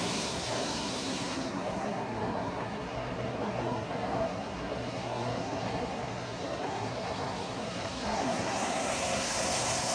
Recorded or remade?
remade